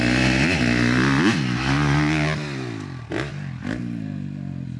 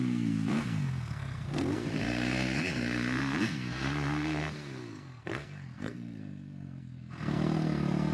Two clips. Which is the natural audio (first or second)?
first